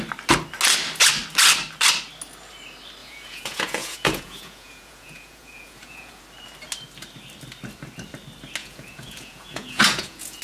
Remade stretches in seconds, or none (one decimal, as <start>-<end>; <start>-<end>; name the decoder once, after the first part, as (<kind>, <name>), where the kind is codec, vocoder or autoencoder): 3.0-6.2 (vocoder, Vocos); 8.6-10.4